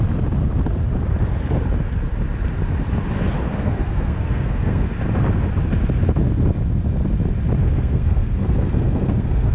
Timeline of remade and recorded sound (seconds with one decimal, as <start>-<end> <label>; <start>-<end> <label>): 0.0-3.5 recorded; 3.5-4.9 remade; 4.9-7.6 recorded; 7.6-9.5 remade